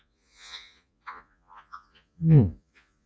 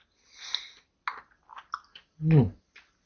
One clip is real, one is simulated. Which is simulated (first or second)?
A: first